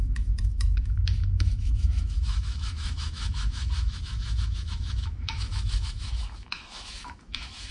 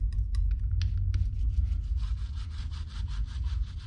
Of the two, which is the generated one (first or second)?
first